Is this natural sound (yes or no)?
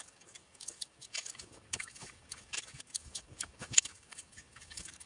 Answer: no